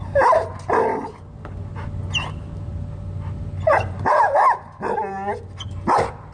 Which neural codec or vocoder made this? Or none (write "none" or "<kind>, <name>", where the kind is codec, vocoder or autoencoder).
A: none